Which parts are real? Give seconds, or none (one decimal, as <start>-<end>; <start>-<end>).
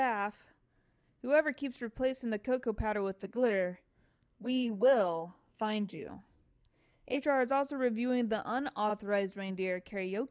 0.0-3.2; 6.1-6.5; 7.2-10.3